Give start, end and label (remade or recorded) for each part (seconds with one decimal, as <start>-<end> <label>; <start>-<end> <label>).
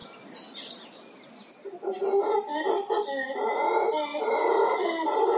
0.0-5.4 recorded